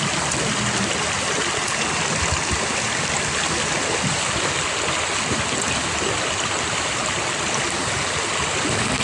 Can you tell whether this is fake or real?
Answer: real